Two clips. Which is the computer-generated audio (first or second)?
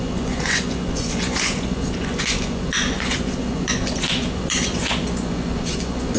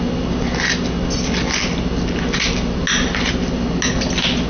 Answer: first